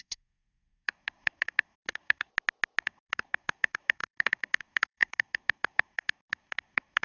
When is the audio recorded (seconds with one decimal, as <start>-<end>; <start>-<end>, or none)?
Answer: 2.3-2.8